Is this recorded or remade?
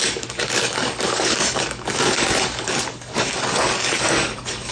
remade